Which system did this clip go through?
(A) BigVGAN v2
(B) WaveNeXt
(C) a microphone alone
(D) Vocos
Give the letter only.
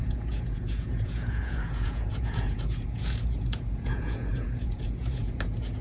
D